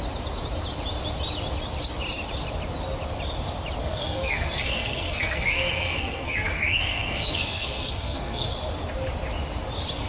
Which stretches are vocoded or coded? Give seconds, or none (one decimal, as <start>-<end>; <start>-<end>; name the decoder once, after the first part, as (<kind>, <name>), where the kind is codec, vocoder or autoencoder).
3.8-8.5 (codec, SNAC)